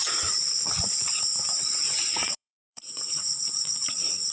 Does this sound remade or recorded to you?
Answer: remade